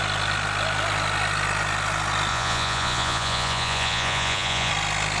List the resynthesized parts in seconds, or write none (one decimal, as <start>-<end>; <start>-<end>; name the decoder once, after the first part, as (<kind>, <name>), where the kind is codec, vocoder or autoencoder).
2.3-4.7 (vocoder, Vocos)